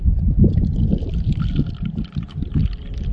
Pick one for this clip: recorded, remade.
recorded